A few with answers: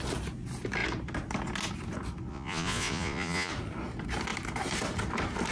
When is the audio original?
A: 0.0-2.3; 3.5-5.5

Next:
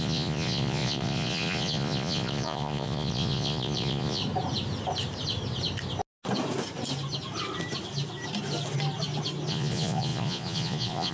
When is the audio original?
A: 4.2-9.5

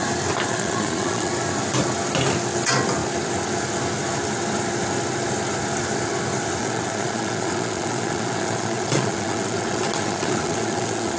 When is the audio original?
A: 0.0-0.5; 1.3-6.6

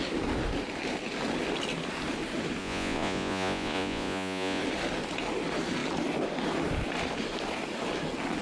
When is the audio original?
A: 0.0-2.6; 4.6-8.4

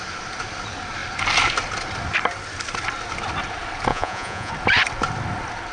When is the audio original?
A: 0.0-3.9; 4.5-5.7

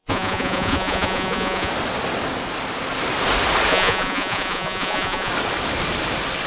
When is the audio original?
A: 1.7-3.7; 5.3-6.5

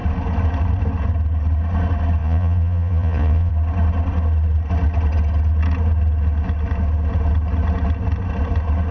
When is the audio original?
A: 0.0-2.2; 3.5-8.9